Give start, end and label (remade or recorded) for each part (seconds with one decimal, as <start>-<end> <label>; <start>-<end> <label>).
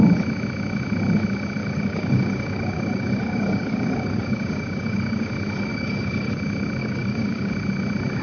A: 0.0-1.6 recorded; 1.6-5.3 remade; 5.3-5.7 recorded; 5.7-6.3 remade; 6.3-6.8 recorded; 6.8-7.5 remade; 7.5-8.2 recorded